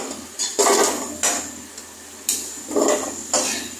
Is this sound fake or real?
real